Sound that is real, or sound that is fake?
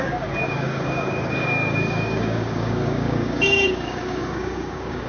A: fake